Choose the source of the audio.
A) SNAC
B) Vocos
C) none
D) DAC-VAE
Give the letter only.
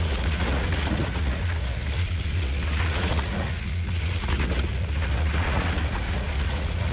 B